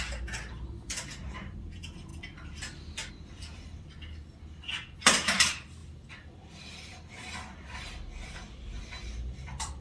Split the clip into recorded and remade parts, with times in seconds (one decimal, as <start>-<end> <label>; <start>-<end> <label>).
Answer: 0.0-2.1 remade; 2.1-3.1 recorded; 3.1-9.8 remade